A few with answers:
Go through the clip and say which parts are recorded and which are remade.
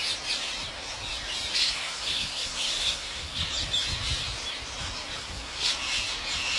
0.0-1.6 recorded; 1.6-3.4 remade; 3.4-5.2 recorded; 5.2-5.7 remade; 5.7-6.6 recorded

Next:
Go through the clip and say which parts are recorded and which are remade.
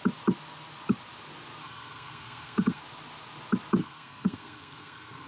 0.0-1.6 recorded; 1.6-2.8 remade; 2.8-3.8 recorded; 3.8-5.3 remade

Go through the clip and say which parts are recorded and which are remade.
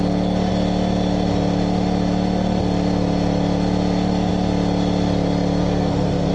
0.0-5.6 recorded; 5.6-6.3 remade